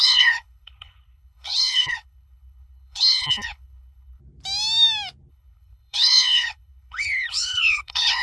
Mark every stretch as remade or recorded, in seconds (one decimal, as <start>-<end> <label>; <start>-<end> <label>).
0.0-4.2 remade; 4.2-5.3 recorded; 5.3-8.2 remade